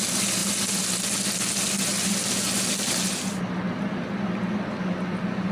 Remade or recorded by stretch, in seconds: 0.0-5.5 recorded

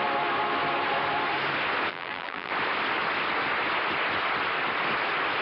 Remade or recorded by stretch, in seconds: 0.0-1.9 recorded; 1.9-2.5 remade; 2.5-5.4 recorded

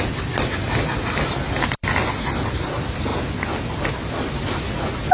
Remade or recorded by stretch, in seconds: 0.0-5.1 recorded

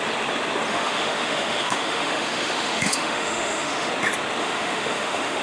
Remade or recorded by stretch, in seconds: 0.0-0.7 recorded; 0.7-3.9 remade; 3.9-4.4 recorded; 4.4-5.4 remade

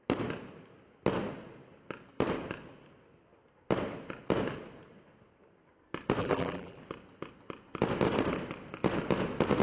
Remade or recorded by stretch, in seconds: 0.0-6.2 recorded; 6.2-6.8 remade; 6.8-9.6 recorded

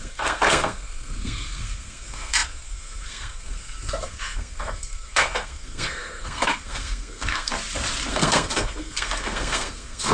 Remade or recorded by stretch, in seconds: 0.0-7.5 remade; 7.5-8.1 recorded; 8.1-10.1 remade